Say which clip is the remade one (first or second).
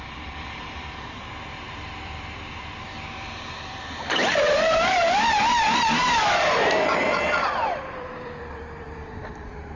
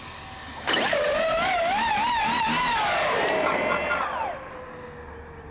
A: first